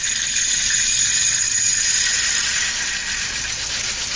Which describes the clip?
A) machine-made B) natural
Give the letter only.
B